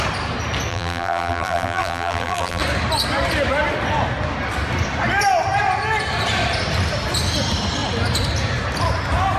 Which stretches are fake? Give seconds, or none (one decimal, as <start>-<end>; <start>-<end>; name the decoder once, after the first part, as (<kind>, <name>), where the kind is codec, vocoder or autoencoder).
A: 0.7-2.6 (vocoder, BigVGAN v2)